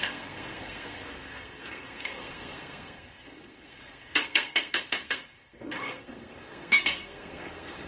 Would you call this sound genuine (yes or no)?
no